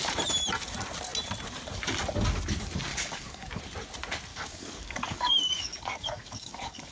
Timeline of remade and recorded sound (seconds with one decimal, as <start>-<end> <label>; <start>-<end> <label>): 0.0-2.9 recorded; 2.9-3.6 remade; 3.6-4.3 recorded; 4.3-6.9 remade